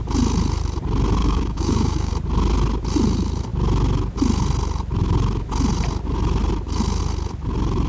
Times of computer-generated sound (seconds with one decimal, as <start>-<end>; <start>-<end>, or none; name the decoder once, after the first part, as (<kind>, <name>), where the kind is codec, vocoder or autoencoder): 1.2-2.1 (codec, DAC)